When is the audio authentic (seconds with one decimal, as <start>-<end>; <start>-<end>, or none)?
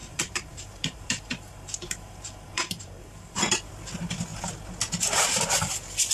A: 3.7-6.1